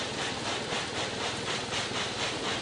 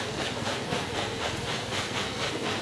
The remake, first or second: second